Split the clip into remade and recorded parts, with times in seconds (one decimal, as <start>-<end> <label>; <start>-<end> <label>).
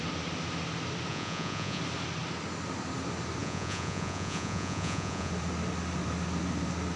0.0-1.1 recorded; 1.1-1.8 remade; 1.8-3.4 recorded; 3.4-5.3 remade; 5.3-7.0 recorded